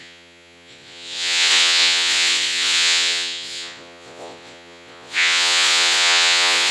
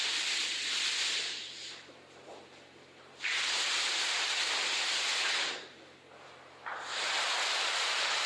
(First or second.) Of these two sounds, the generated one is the first